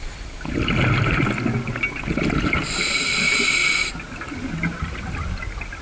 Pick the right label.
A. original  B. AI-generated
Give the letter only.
A